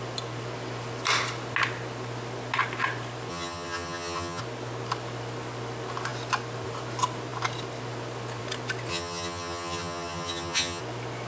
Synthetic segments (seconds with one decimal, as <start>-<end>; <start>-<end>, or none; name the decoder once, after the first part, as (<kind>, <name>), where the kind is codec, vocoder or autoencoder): 3.3-4.4 (vocoder, HiFi-GAN); 8.9-10.8